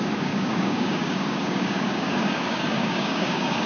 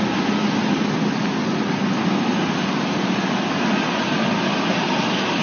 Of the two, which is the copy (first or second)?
first